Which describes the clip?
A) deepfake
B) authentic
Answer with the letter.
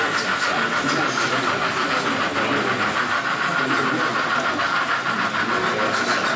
B